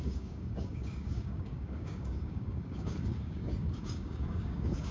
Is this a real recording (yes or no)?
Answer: no